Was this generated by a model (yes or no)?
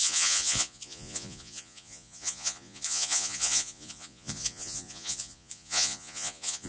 yes